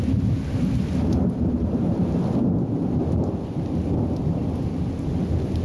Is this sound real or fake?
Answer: real